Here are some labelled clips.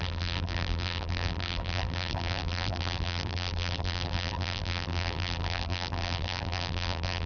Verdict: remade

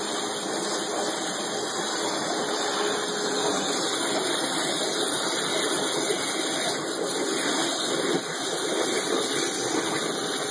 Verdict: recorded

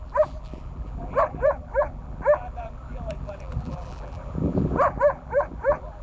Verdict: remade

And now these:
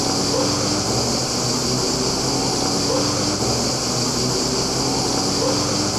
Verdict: recorded